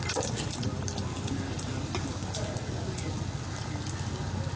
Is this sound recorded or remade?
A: recorded